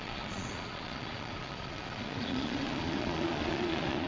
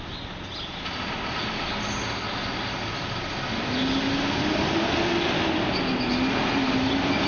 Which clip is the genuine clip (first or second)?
second